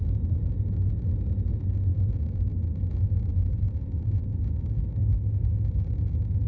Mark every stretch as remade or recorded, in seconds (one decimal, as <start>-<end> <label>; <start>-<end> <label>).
0.0-3.3 recorded; 3.3-4.5 remade; 4.5-6.5 recorded